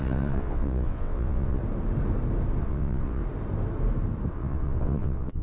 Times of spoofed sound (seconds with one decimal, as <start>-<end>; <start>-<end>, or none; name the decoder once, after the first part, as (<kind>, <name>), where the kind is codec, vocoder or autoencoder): 0.0-1.6 (vocoder, WaveNeXt); 2.6-3.2; 4.3-5.4